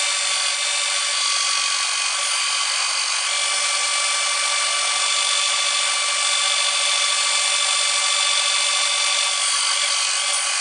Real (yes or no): yes